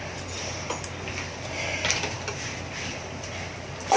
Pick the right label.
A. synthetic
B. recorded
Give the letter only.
B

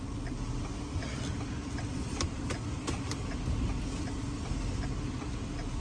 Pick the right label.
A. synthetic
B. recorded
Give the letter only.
B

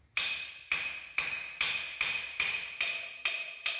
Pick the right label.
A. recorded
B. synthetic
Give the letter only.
A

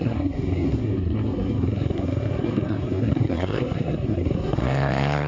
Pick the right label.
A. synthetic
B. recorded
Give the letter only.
A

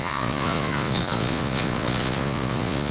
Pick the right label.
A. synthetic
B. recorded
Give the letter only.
A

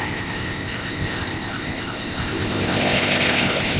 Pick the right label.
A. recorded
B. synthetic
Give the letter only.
B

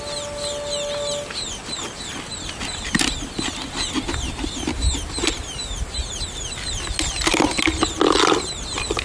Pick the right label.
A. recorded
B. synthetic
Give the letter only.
A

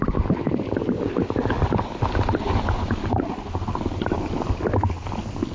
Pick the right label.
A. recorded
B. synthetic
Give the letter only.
A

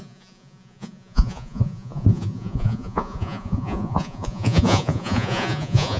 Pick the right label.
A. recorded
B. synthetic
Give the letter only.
B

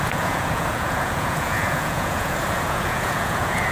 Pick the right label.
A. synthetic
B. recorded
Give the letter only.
A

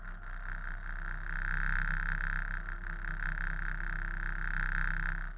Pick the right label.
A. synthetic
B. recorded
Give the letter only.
B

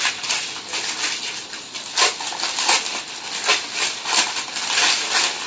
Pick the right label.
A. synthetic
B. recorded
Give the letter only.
B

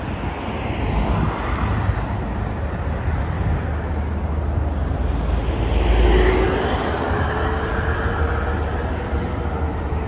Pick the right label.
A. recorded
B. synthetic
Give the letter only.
A